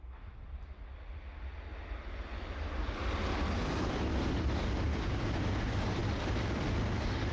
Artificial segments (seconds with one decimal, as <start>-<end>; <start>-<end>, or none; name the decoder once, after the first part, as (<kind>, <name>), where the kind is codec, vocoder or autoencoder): 4.9-5.5 (codec, DAC)